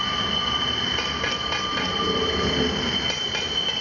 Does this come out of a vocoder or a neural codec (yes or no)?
no